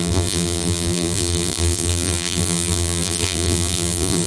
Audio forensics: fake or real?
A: fake